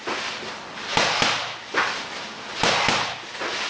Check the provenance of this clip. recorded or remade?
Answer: recorded